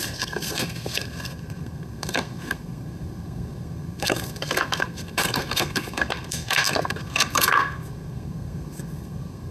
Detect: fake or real fake